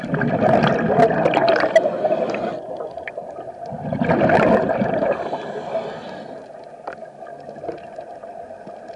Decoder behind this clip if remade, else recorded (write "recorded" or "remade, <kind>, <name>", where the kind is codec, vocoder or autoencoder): recorded